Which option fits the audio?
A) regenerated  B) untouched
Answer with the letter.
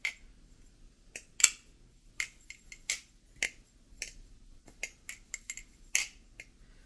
B